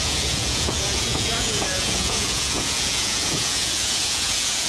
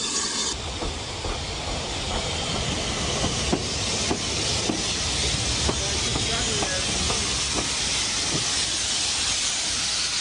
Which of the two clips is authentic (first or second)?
second